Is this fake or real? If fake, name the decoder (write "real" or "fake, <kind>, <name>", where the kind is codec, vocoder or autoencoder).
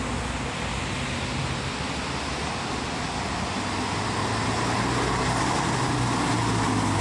real